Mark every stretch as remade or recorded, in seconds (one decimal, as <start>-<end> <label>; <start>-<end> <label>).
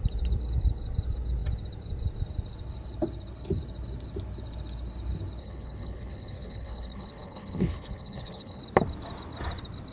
0.0-5.4 recorded; 5.4-8.6 remade; 8.6-9.9 recorded